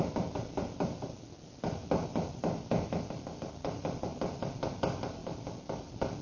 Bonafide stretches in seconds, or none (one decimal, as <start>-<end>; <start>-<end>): 0.0-6.2